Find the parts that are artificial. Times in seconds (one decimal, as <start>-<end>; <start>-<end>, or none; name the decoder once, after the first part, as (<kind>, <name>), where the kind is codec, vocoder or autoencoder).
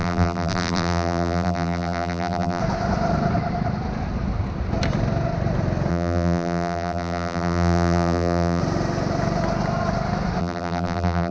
0.0-2.6 (vocoder, BigVGAN v2); 5.9-8.6; 10.4-11.3